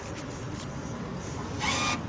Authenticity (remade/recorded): remade